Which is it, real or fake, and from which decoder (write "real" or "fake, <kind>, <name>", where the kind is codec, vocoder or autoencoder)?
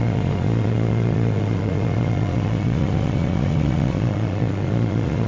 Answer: fake, vocoder, Vocos